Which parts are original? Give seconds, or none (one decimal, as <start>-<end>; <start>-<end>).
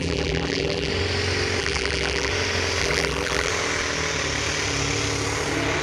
0.9-1.6; 2.3-2.8; 3.5-5.8